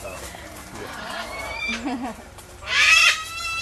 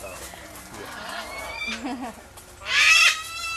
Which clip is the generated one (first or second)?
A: first